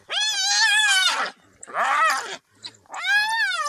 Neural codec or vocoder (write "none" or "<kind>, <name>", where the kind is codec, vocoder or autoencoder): none